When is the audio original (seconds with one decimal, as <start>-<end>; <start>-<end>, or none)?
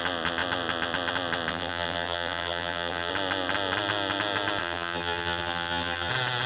0.0-1.5; 3.1-4.6; 6.1-6.5